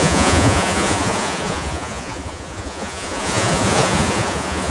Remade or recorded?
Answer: remade